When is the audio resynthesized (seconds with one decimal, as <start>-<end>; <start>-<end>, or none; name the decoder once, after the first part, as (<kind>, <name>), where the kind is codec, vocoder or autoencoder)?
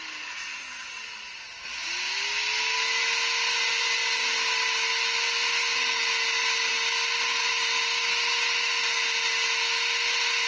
none